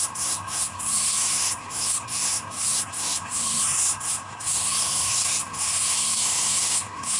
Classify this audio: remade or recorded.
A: remade